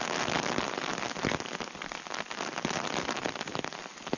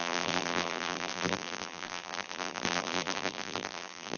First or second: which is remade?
second